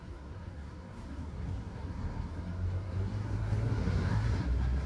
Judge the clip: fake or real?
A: fake